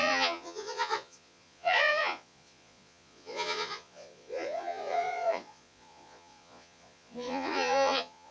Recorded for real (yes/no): no